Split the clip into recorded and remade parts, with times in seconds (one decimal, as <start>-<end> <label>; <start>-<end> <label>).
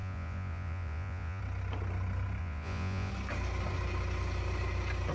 0.0-1.4 remade; 1.4-2.4 recorded; 2.4-3.1 remade; 3.1-5.1 recorded